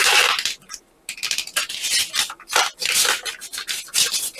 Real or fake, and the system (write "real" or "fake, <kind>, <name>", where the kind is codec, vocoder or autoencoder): real